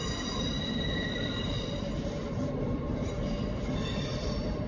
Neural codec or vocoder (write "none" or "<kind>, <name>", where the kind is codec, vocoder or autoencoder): vocoder, BigVGAN v2